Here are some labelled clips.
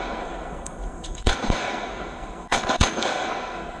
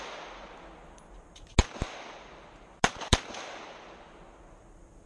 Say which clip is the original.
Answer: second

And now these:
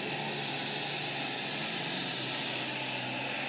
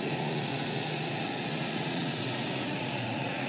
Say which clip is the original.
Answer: first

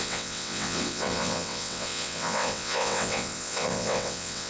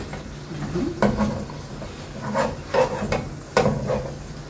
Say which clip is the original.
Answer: second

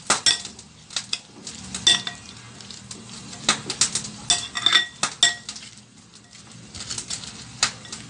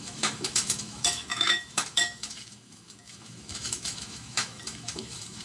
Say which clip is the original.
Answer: first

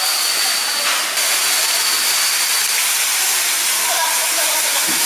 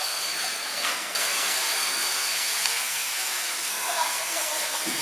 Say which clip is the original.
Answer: first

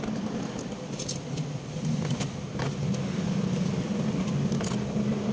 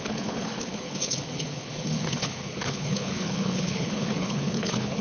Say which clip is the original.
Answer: first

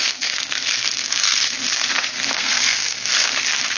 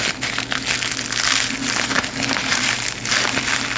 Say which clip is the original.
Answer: second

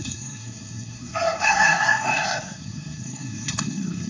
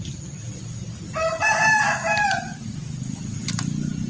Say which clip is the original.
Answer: second